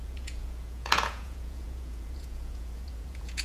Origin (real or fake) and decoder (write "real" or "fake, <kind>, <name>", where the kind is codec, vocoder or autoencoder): fake, vocoder, Vocos